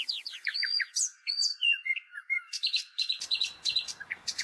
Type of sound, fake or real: fake